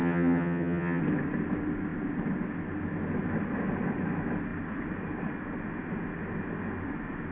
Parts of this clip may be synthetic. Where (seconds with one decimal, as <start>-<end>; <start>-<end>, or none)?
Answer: 0.0-1.0